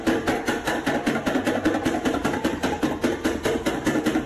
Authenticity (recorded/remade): recorded